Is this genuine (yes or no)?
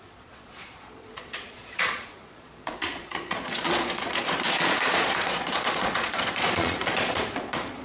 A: no